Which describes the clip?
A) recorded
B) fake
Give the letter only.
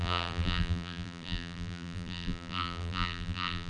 B